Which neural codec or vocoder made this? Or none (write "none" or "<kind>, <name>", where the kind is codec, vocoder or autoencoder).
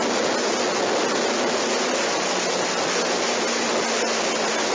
none